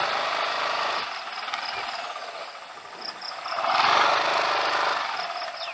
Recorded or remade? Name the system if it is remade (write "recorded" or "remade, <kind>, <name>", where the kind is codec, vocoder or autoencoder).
recorded